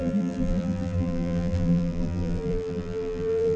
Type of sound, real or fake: fake